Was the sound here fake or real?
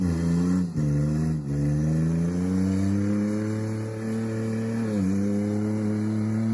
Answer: real